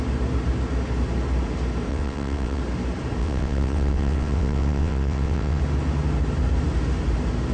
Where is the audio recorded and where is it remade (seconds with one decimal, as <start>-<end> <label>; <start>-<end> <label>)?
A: 0.0-1.9 recorded; 1.9-2.6 remade; 2.6-3.2 recorded; 3.2-5.6 remade; 5.6-7.5 recorded